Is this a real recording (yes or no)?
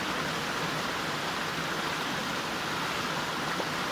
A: yes